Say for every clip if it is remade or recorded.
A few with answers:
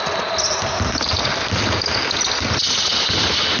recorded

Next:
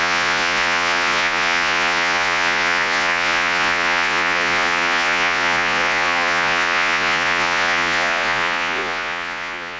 remade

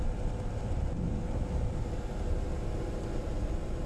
recorded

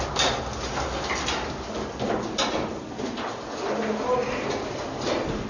recorded